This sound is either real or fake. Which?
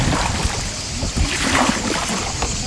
real